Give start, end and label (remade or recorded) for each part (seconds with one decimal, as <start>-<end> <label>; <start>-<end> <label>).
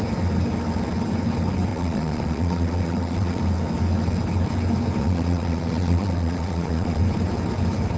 0.0-1.7 recorded; 1.7-3.4 remade; 3.4-5.0 recorded; 5.0-7.0 remade; 7.0-8.0 recorded